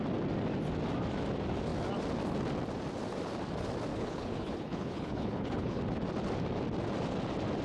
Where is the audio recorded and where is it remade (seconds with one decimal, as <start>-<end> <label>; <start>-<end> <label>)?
0.0-3.9 recorded; 3.9-5.8 remade; 5.8-7.6 recorded

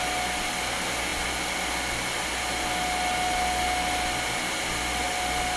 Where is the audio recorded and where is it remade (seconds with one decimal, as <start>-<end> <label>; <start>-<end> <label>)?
0.0-5.6 recorded

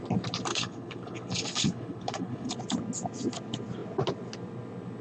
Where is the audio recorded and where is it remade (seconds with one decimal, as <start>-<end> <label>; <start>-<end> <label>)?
0.0-0.5 recorded; 0.5-2.5 remade; 2.5-5.0 recorded